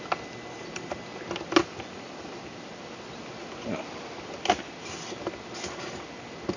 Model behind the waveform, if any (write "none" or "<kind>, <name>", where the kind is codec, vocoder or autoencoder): none